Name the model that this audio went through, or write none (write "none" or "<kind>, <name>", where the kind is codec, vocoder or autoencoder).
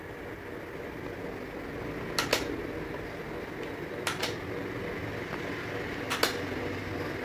none